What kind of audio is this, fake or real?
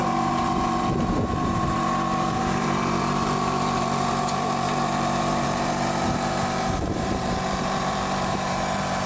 fake